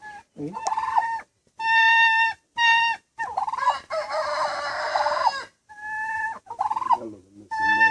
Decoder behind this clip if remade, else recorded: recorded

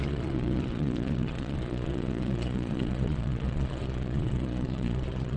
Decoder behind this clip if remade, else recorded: remade, vocoder, Vocos